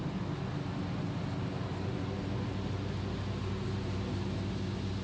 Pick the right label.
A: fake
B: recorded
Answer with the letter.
B